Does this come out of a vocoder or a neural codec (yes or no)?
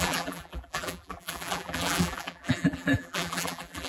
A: yes